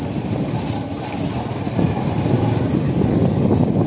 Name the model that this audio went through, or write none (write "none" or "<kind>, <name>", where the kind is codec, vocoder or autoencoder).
none